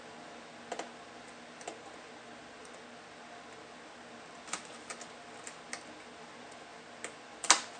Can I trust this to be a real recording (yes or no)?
yes